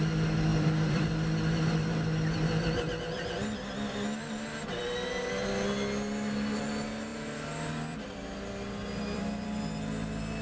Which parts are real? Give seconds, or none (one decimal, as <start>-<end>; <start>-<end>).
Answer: 0.0-0.5; 1.9-7.1; 9.6-10.4